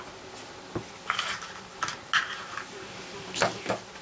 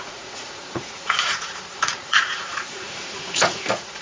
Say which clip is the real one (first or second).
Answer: first